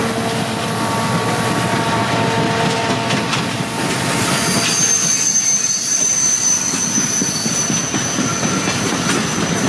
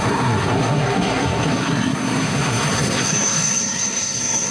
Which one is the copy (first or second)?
second